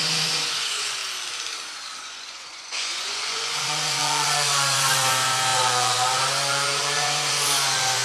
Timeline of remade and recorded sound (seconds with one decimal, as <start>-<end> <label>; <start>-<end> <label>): 0.0-1.0 remade; 1.0-2.0 recorded; 2.0-8.0 remade